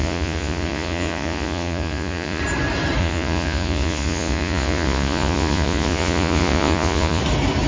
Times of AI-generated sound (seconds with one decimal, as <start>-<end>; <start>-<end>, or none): 0.0-2.4; 3.0-7.2